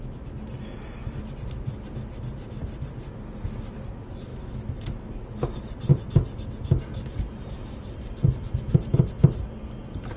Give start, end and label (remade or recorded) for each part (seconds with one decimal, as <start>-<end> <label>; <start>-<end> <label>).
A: 0.0-4.3 recorded; 4.3-5.2 remade; 5.2-10.2 recorded